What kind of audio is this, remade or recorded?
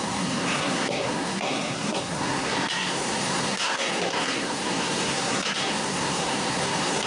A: remade